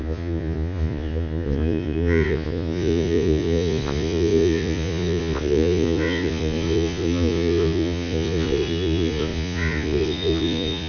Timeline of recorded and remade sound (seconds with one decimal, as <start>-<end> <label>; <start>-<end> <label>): 0.0-10.9 remade